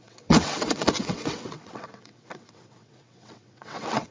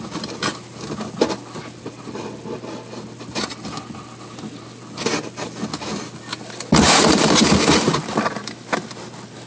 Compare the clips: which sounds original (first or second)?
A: second